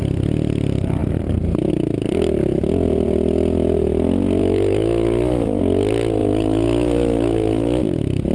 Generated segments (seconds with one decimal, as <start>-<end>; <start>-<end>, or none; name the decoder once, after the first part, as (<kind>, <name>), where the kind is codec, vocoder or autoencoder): 4.4-5.6 (autoencoder, DAC-VAE); 6.2-7.8